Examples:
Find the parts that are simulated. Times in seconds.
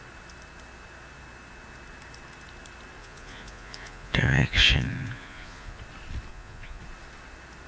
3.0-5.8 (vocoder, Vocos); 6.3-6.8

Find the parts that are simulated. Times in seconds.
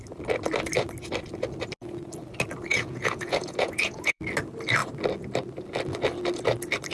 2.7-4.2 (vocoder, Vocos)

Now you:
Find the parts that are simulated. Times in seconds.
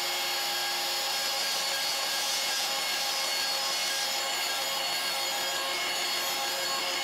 1.9-2.7 (vocoder, Vocos)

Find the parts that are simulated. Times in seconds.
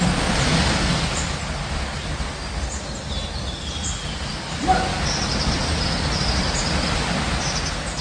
none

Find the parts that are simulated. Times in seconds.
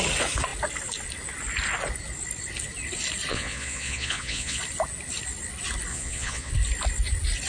3.3-4.6 (vocoder, Vocos); 5.9-6.5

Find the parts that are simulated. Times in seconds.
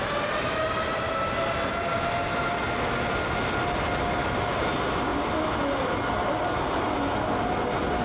none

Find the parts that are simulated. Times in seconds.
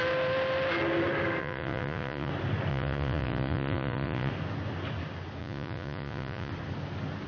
1.4-2.3 (vocoder, Vocos); 2.7-4.3; 5.4-6.5